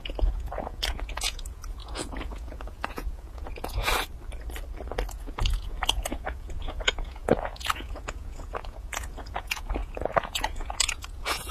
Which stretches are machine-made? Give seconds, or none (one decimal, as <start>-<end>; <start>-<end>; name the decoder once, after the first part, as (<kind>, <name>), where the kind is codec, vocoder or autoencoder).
0.0-3.9 (vocoder, Vocos); 5.1-11.5